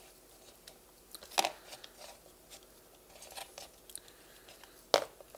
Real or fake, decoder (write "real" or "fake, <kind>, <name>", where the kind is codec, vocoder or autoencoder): real